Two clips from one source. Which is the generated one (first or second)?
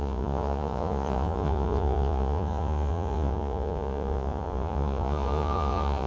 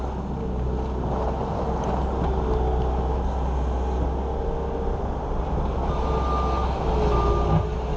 first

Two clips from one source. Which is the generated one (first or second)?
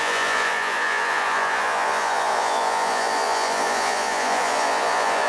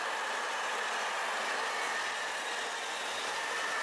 first